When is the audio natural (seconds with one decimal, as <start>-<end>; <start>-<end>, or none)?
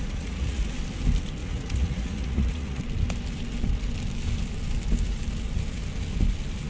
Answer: 0.6-1.4; 2.8-6.7